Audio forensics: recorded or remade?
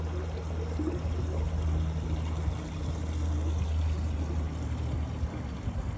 recorded